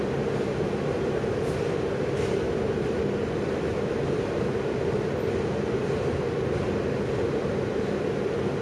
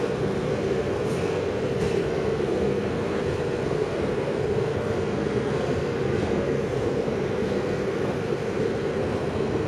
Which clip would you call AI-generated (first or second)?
second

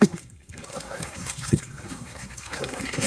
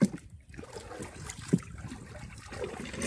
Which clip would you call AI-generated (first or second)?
first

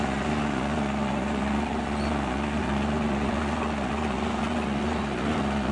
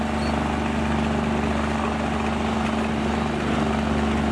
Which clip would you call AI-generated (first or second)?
first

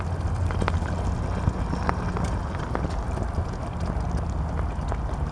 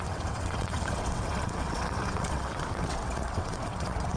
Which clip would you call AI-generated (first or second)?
second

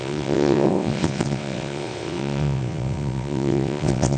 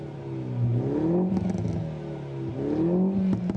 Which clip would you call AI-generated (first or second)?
first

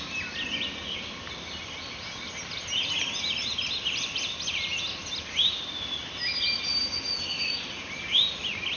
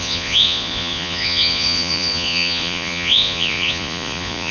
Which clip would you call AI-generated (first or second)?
second